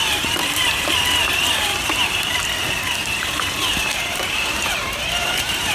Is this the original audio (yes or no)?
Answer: no